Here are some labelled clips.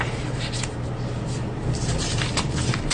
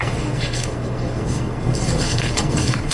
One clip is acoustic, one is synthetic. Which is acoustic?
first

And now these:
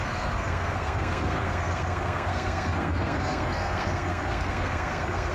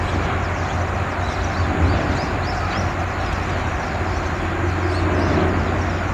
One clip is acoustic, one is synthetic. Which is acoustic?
second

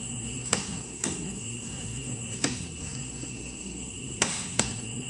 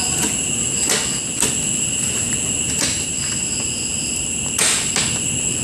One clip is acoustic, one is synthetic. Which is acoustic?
second